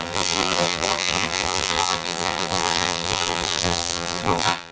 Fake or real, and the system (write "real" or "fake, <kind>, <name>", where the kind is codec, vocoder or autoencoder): fake, vocoder, BigVGAN v2